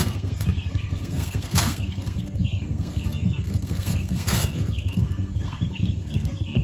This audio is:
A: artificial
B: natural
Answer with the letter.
A